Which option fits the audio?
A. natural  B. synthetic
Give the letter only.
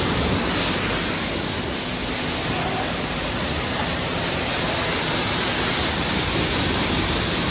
A